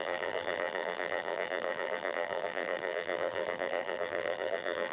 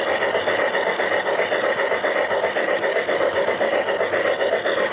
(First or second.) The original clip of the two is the second